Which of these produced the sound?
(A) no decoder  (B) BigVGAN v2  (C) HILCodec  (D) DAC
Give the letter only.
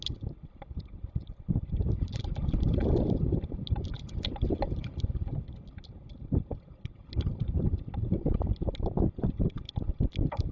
A